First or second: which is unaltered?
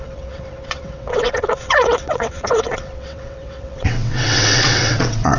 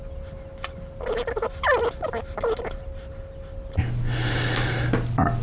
second